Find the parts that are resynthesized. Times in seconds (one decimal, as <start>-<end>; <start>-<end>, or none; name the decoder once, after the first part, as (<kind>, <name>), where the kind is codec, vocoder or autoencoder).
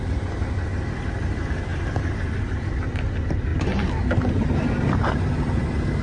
none